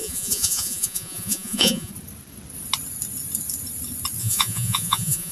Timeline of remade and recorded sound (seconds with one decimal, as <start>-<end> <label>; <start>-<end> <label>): 0.0-1.9 remade; 1.9-4.2 recorded; 4.2-5.3 remade